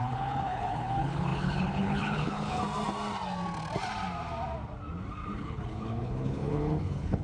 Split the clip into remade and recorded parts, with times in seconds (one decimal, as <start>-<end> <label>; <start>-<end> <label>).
0.0-2.6 remade; 2.6-5.4 recorded; 5.4-7.2 remade